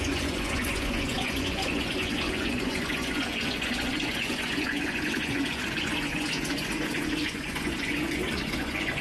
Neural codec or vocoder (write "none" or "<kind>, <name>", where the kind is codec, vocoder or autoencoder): vocoder, Vocos